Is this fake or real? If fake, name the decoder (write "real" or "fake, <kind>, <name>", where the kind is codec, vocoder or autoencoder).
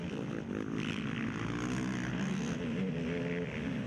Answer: real